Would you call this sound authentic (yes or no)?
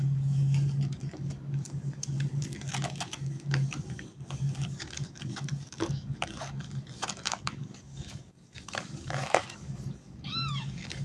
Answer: no